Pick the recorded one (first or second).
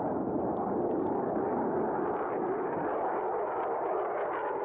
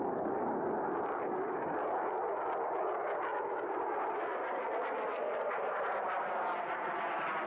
second